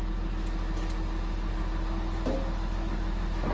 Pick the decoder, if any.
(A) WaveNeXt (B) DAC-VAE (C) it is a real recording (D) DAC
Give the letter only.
C